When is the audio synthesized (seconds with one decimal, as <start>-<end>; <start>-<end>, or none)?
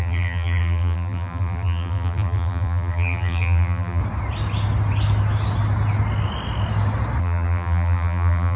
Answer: 0.0-4.0; 7.2-8.6